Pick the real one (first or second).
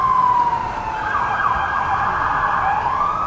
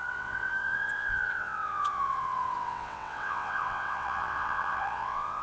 first